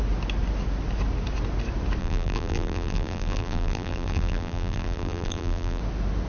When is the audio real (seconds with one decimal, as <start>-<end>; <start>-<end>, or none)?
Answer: 0.0-2.0; 5.8-6.3